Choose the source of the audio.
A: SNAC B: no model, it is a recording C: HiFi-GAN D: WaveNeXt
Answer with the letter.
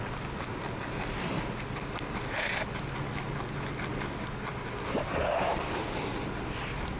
B